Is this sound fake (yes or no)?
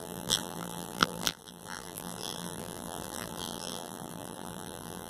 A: yes